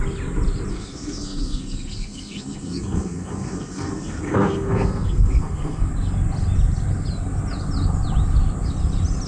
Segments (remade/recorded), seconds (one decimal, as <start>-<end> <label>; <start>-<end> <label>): 0.0-0.7 recorded; 0.7-5.9 remade; 5.9-9.3 recorded